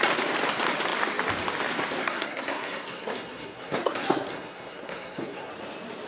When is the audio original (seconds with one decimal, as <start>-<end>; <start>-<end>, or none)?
0.0-2.0; 5.5-6.1